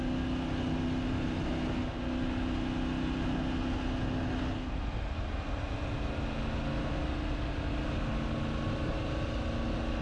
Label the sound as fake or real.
real